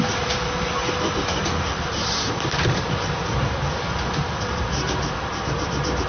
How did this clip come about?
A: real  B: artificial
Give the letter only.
A